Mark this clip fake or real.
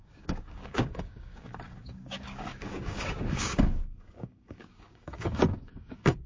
fake